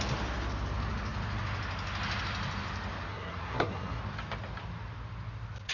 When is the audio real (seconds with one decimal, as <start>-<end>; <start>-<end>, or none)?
0.0-3.1; 4.0-5.7